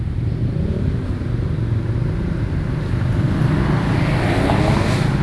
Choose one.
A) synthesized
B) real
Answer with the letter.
B